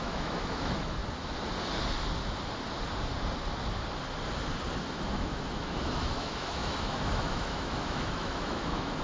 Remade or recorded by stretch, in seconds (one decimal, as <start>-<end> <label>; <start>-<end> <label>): 0.0-1.0 remade; 1.0-4.8 recorded; 4.8-9.0 remade